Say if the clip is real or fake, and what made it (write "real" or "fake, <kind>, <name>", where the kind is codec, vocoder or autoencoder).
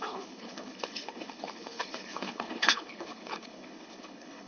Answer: fake, codec, HILCodec